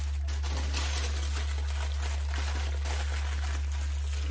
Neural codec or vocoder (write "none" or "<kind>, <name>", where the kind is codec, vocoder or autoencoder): none